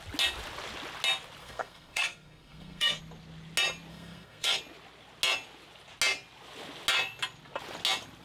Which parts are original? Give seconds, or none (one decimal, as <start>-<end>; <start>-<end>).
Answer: 0.0-1.4; 3.0-3.9; 4.6-8.2